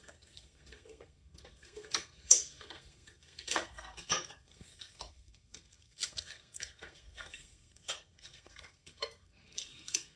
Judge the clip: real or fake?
fake